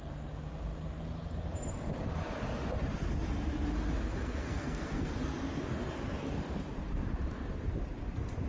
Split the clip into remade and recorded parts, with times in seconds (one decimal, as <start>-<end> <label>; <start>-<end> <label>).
0.0-4.1 recorded; 4.1-5.1 remade; 5.1-8.5 recorded